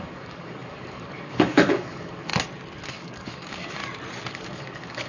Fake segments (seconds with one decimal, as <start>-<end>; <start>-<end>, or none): 0.0-2.3; 2.9-3.8; 4.3-5.1